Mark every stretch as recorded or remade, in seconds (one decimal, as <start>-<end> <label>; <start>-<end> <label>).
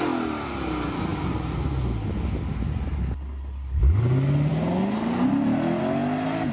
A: 0.0-6.5 recorded